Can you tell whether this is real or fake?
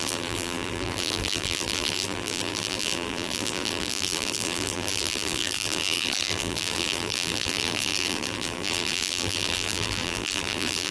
fake